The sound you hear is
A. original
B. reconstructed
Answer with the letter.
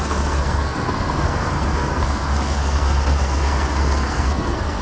B